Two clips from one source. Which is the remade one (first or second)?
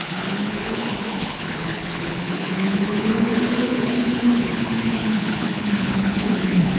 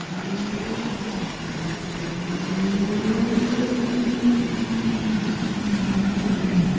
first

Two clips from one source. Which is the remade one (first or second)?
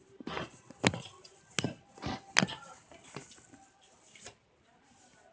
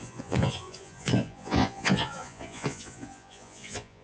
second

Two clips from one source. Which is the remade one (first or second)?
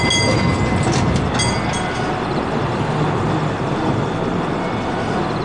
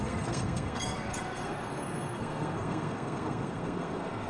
second